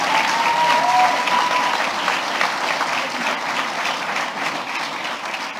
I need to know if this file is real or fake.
real